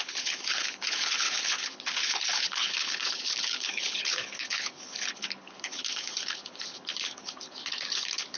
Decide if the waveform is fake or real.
fake